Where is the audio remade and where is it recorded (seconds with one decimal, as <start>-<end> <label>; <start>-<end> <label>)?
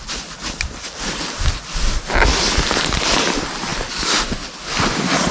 0.0-5.3 recorded